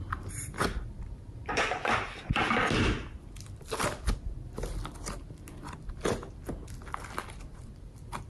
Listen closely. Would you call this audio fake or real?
real